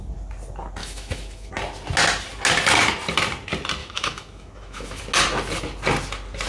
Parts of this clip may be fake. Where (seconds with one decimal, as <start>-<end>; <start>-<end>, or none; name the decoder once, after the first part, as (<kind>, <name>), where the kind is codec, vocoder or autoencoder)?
0.8-1.5 (autoencoder, DAC-VAE); 3.8-5.0